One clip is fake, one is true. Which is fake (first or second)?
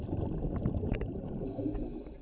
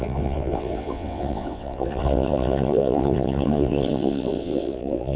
second